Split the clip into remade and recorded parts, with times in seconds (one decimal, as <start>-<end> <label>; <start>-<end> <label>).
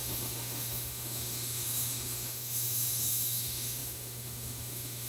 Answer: 0.0-5.1 remade